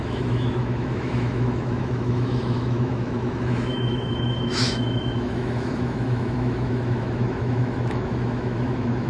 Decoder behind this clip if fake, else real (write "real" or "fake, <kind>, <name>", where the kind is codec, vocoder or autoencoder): fake, autoencoder, DAC-VAE